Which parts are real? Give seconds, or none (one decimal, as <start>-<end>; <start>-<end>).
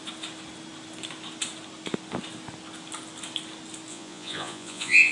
0.0-3.9